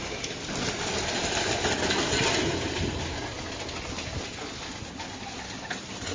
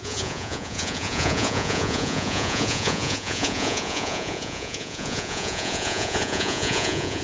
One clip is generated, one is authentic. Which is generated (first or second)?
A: second